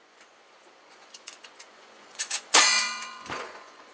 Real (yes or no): no